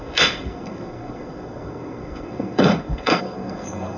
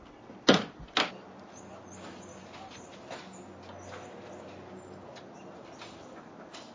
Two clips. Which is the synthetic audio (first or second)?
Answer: first